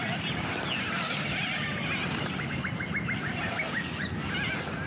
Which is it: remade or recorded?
recorded